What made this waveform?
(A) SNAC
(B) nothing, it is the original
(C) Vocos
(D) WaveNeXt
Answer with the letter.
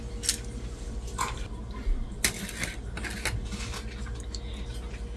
B